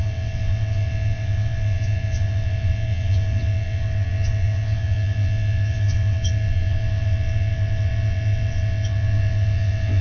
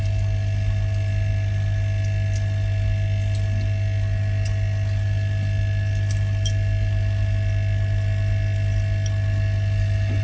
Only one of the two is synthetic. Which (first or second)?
first